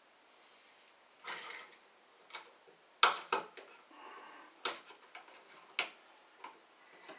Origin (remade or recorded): recorded